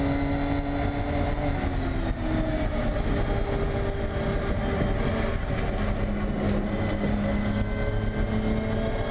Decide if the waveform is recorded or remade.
recorded